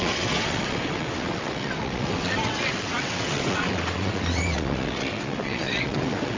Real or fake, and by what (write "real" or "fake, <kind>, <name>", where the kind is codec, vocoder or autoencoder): fake, vocoder, WaveNeXt